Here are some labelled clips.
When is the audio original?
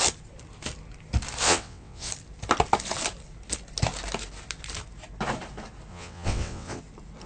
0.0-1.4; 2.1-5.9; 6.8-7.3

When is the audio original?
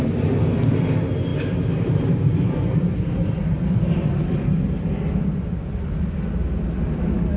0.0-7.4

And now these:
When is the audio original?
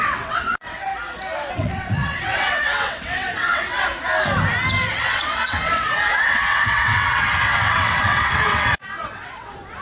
0.9-1.5; 3.9-4.9